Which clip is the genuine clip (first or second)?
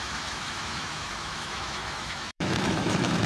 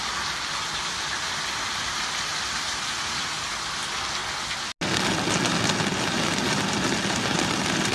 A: second